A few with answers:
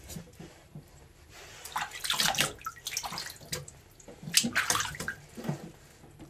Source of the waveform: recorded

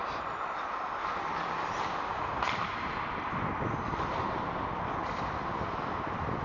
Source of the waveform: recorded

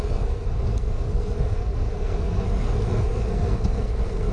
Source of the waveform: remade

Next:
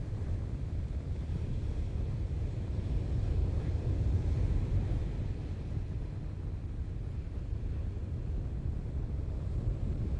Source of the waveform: recorded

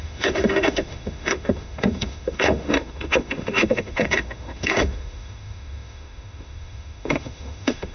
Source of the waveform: remade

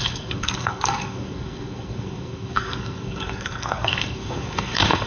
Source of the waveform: remade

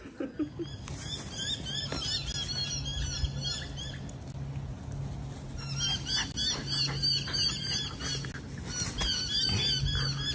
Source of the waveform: recorded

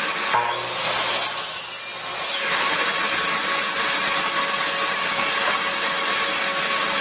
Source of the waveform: recorded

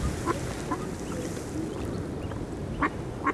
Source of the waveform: recorded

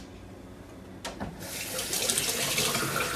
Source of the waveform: recorded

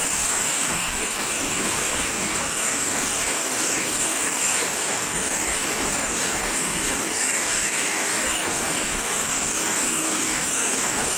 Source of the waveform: remade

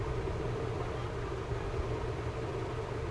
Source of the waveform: recorded